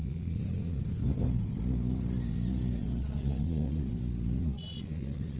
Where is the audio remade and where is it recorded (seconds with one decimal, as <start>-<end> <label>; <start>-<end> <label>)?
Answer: 0.0-0.8 remade; 0.8-2.8 recorded; 2.8-3.9 remade; 3.9-4.4 recorded; 4.4-5.4 remade